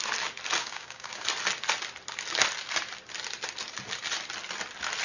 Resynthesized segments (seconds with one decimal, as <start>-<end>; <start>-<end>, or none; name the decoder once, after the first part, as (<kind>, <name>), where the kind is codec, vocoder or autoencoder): 0.6-1.2 (codec, DAC)